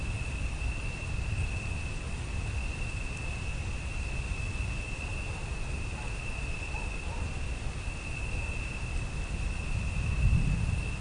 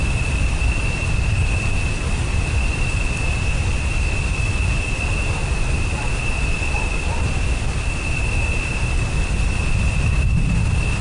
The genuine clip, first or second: first